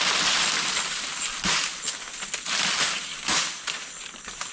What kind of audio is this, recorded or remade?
recorded